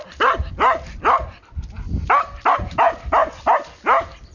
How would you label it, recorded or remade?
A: recorded